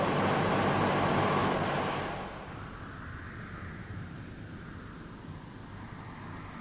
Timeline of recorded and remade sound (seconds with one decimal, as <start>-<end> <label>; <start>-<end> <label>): 0.0-6.6 recorded